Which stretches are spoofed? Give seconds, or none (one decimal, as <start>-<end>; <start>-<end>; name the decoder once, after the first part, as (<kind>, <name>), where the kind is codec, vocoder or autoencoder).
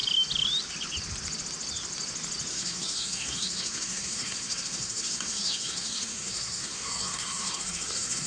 2.5-8.3 (codec, SNAC)